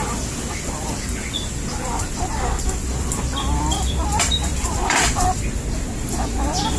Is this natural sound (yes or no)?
no